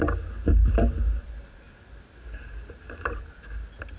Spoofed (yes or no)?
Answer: no